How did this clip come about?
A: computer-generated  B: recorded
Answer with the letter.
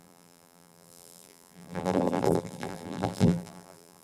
A